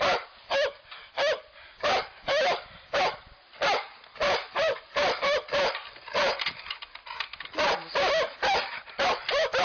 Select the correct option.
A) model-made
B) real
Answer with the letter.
B